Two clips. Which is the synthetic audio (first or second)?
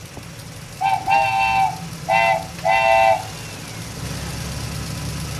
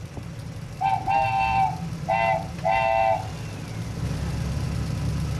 second